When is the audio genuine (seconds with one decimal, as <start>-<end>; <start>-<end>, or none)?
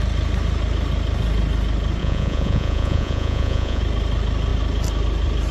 0.0-2.0; 3.8-5.5